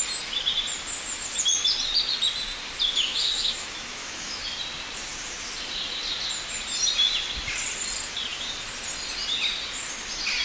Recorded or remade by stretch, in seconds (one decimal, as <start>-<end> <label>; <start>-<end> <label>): 0.0-3.1 recorded; 3.1-4.4 remade; 4.4-10.4 recorded